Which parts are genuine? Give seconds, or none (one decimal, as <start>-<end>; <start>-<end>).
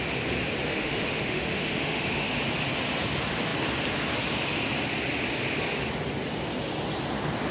0.0-0.7; 2.4-7.5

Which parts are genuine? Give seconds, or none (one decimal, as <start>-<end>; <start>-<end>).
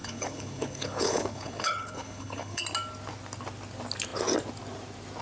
2.6-5.2